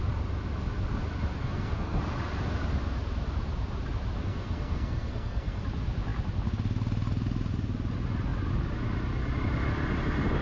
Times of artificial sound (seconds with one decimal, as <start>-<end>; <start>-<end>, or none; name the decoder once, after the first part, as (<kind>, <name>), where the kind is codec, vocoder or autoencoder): 1.4-2.0 (codec, SNAC); 4.3-5.6